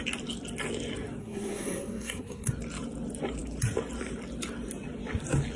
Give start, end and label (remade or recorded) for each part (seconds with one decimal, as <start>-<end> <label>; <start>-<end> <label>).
0.0-1.2 recorded; 1.2-2.5 remade; 2.5-5.6 recorded